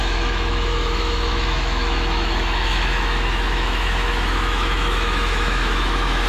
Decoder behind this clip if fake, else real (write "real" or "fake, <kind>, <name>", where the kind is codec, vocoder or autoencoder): fake, autoencoder, DAC-VAE